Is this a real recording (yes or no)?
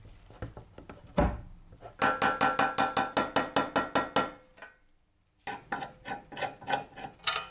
yes